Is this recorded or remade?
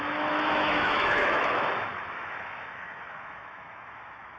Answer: remade